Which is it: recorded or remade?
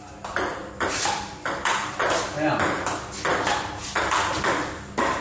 recorded